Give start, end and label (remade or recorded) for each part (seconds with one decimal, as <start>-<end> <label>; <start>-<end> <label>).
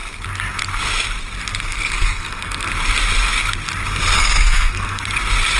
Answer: 0.0-1.7 recorded; 1.7-2.7 remade; 2.7-4.2 recorded; 4.2-5.0 remade; 5.0-5.6 recorded